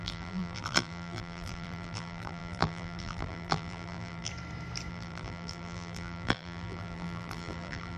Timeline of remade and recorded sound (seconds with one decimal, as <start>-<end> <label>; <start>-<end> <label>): 0.0-4.3 remade; 4.3-4.9 recorded; 4.9-8.0 remade